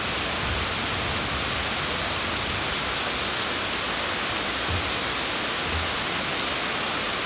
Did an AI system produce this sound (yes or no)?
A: no